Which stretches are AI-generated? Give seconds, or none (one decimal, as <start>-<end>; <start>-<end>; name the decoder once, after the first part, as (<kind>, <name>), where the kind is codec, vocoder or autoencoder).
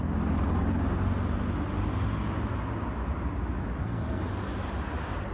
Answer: 3.8-4.3 (codec, SNAC)